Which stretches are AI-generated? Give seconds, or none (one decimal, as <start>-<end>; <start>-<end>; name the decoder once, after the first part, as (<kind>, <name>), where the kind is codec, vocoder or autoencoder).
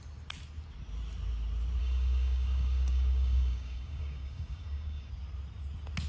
1.8-5.1 (codec, DAC)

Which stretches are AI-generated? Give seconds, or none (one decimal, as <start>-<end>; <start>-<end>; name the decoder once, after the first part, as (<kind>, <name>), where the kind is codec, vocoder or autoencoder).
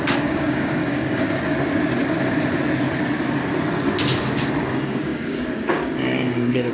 0.0-1.5 (codec, DAC); 4.6-6.7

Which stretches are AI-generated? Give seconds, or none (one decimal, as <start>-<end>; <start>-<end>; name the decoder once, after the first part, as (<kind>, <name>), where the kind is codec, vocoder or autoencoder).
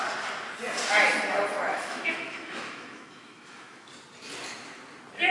1.7-3.9 (autoencoder, DAC-VAE)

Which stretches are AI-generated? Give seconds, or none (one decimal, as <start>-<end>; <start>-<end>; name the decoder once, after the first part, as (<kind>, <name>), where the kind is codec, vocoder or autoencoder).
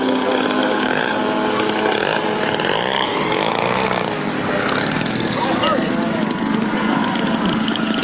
0.6-1.2 (codec, DAC); 3.1-8.0